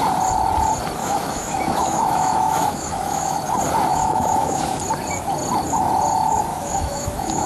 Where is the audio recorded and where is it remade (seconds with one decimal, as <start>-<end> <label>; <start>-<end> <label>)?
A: 0.0-1.0 recorded; 1.0-3.4 remade; 3.4-3.9 recorded; 3.9-4.8 remade; 4.8-6.5 recorded; 6.5-7.5 remade